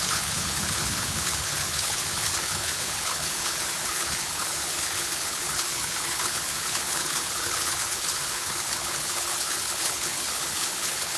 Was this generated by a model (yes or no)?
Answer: yes